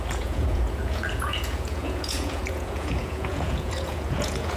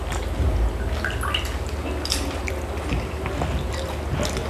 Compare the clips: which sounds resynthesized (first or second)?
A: first